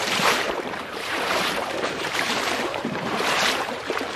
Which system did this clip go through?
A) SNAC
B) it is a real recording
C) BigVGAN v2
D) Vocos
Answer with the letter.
C